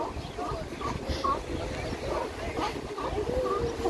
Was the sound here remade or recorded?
recorded